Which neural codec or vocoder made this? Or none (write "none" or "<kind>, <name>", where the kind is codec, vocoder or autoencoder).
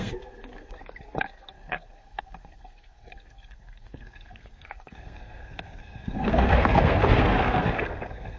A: codec, SNAC